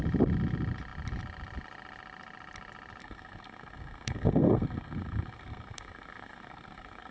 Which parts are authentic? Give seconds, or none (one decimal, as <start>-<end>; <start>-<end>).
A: 0.0-3.0